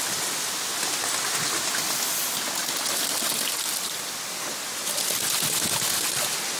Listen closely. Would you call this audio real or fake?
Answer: real